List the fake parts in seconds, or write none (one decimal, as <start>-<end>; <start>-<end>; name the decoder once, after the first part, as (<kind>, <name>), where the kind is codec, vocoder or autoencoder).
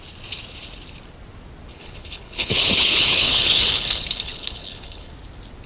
1.7-5.1 (codec, HILCodec)